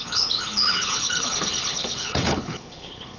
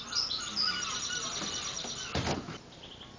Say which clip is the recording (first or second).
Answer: second